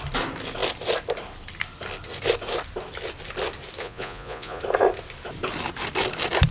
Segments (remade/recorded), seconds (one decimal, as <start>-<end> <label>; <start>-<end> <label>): 0.0-3.8 recorded; 3.8-4.6 remade; 4.6-6.5 recorded

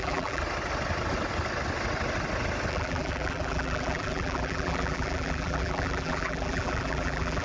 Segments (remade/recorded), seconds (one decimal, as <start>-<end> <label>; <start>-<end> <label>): 0.0-0.4 remade; 0.4-2.7 recorded; 2.7-7.4 remade

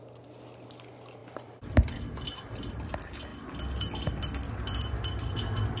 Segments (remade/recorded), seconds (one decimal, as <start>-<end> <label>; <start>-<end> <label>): 0.0-1.2 recorded; 1.2-2.9 remade; 2.9-5.8 recorded

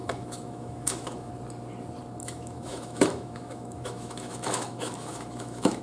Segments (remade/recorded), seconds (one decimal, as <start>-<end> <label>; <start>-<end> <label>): 0.0-1.3 remade; 1.3-2.2 recorded; 2.2-5.8 remade

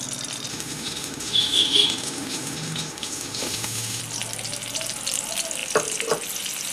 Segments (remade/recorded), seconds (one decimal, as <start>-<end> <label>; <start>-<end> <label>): 0.0-0.5 recorded; 0.5-4.0 remade; 4.0-6.7 recorded